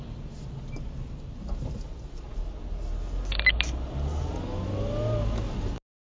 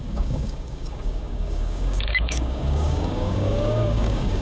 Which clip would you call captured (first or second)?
first